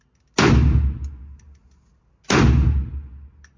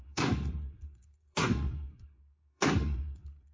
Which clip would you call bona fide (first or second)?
first